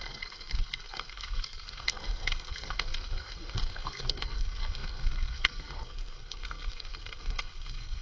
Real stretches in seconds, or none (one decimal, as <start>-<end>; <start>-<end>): none